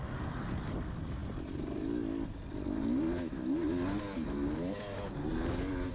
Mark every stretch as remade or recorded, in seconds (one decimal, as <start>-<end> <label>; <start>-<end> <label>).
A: 0.0-5.9 recorded